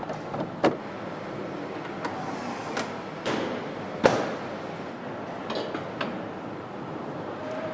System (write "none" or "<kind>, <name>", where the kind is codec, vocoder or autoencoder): none